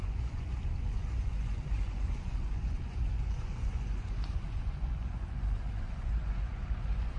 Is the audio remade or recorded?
remade